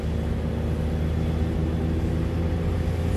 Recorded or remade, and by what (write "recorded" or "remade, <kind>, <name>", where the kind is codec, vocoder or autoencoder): recorded